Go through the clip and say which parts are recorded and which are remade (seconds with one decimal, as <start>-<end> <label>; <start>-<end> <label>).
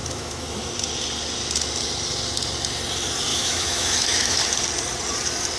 0.0-0.7 remade; 0.7-3.3 recorded; 3.3-4.4 remade; 4.4-5.6 recorded